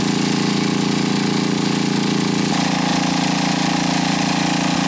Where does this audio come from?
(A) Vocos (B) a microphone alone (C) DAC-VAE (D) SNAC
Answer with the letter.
B